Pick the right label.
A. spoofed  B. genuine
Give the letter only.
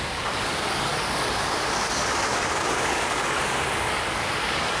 A